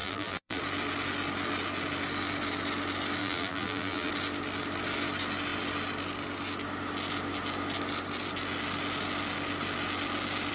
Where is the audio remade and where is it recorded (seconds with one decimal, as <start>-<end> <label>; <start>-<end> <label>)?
0.0-0.6 remade; 0.6-3.2 recorded; 3.2-4.1 remade; 4.1-10.5 recorded

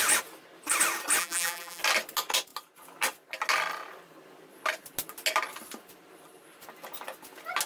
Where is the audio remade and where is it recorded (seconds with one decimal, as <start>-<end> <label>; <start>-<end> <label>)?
0.0-1.2 recorded; 1.2-1.8 remade; 1.8-7.7 recorded

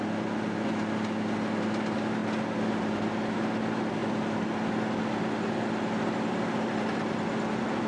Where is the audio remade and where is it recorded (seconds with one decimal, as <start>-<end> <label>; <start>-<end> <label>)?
0.0-7.9 recorded

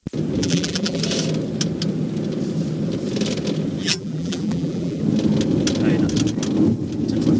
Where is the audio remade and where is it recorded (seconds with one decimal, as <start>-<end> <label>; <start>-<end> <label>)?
0.0-0.4 recorded; 0.4-1.0 remade; 1.0-3.8 recorded; 3.8-5.0 remade; 5.0-7.4 recorded